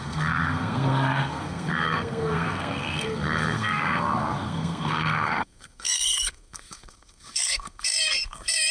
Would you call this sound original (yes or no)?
no